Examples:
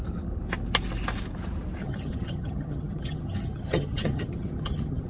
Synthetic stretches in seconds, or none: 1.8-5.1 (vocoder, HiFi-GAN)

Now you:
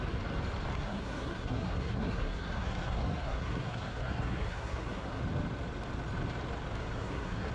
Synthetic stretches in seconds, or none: 0.7-5.2 (codec, SNAC); 6.8-7.5

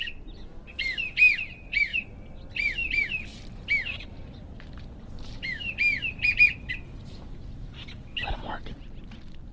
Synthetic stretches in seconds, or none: none

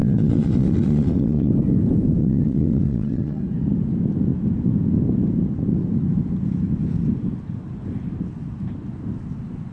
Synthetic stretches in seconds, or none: 0.0-1.5 (vocoder, Vocos); 2.2-3.4

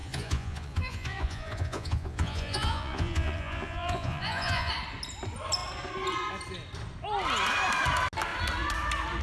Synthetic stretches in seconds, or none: 0.0-4.7 (vocoder, Vocos)

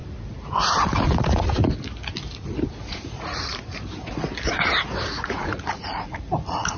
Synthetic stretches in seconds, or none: 1.2-1.6 (vocoder, Vocos); 2.8-3.5; 5.0-6.8

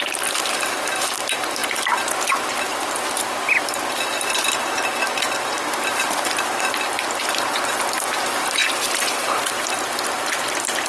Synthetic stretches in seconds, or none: none